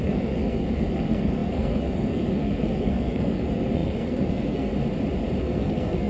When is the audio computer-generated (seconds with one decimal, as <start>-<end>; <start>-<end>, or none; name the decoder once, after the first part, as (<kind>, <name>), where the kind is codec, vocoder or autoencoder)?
0.0-4.7 (codec, SNAC); 5.4-6.1